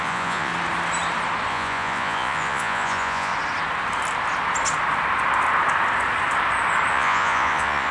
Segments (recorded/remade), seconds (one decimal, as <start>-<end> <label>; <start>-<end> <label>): 0.0-0.5 remade; 0.5-1.5 recorded; 1.5-3.3 remade; 3.3-6.9 recorded; 6.9-7.9 remade